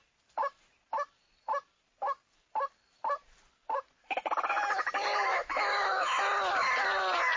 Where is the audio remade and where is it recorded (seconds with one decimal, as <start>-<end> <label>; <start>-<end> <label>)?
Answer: 0.0-5.3 recorded; 5.3-6.2 remade; 6.2-7.4 recorded

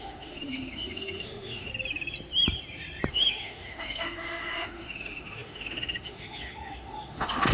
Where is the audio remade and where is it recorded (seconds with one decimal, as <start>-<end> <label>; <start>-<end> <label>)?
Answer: 0.0-1.7 remade; 1.7-3.1 recorded; 3.1-7.5 remade

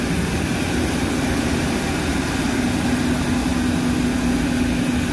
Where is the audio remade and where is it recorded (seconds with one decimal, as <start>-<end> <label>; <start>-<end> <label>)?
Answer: 0.0-5.1 recorded

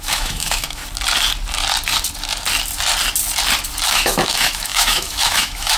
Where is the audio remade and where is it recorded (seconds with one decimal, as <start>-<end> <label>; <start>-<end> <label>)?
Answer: 0.0-0.8 remade; 0.8-3.9 recorded; 3.9-5.8 remade

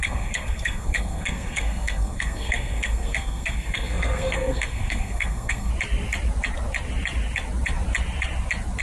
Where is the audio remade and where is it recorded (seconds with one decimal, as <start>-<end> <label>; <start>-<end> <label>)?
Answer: 0.0-5.7 remade; 5.7-8.8 recorded

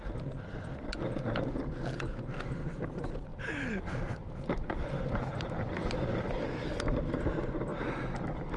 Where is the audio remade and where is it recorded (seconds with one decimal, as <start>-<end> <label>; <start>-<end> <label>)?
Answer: 0.0-3.3 recorded; 3.3-6.4 remade; 6.4-8.6 recorded

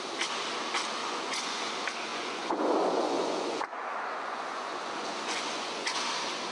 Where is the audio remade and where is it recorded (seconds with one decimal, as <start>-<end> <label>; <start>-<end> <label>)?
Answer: 0.0-1.0 recorded; 1.0-1.7 remade; 1.7-2.1 recorded; 2.1-6.0 remade; 6.0-6.5 recorded

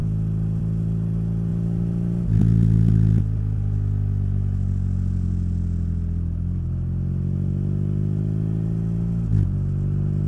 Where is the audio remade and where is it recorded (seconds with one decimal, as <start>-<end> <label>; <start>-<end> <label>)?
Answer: 0.0-0.6 remade; 0.6-10.3 recorded